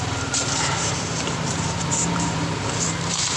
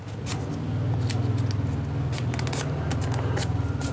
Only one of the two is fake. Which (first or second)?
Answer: first